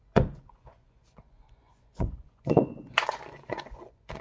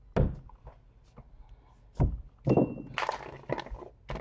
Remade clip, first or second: first